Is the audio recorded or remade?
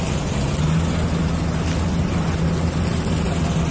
recorded